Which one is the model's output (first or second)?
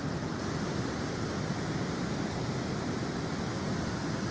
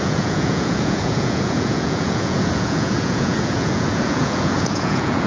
second